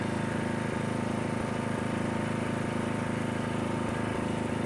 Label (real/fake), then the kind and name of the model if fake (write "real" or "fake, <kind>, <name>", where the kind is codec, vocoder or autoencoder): real